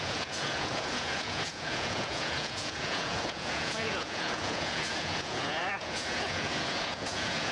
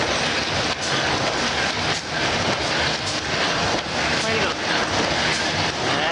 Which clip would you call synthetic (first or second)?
first